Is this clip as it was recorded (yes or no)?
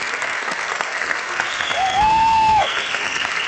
no